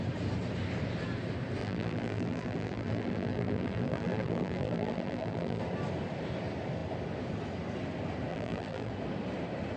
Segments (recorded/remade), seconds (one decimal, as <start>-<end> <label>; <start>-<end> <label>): 0.0-1.6 recorded; 1.6-5.6 remade; 5.6-8.3 recorded; 8.3-8.9 remade; 8.9-9.8 recorded